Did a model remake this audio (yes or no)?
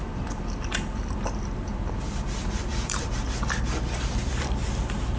yes